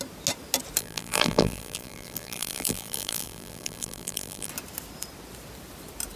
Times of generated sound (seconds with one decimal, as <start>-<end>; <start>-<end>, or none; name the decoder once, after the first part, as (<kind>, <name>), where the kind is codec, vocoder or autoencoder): 0.8-4.5 (vocoder, BigVGAN v2)